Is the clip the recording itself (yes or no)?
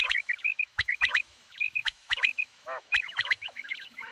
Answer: no